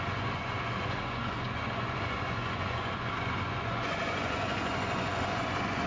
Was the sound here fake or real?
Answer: fake